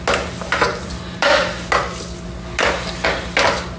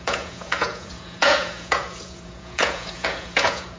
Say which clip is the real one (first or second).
first